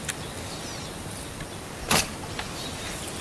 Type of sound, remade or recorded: recorded